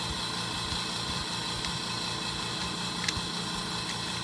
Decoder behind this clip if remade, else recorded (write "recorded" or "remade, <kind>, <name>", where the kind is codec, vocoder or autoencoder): recorded